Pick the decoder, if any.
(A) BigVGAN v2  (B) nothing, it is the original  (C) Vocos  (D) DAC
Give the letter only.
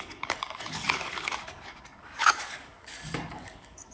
D